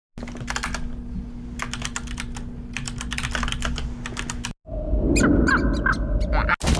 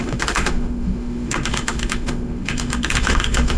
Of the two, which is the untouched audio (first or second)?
first